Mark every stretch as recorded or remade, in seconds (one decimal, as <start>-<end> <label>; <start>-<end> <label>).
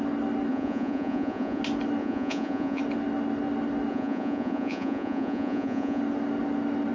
0.0-0.5 recorded; 0.5-1.6 remade; 1.6-2.0 recorded; 2.0-2.8 remade; 2.8-3.9 recorded; 3.9-6.0 remade; 6.0-6.9 recorded